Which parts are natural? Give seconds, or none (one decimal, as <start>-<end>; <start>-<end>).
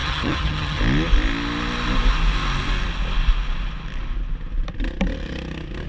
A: 0.8-5.9